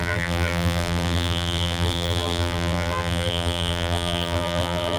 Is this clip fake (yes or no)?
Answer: yes